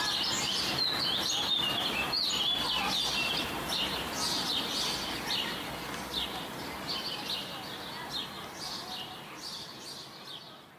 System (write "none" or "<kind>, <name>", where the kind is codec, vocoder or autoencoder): none